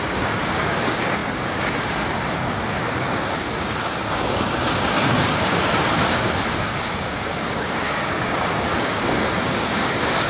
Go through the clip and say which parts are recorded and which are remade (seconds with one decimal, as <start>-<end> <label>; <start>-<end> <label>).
0.0-10.3 remade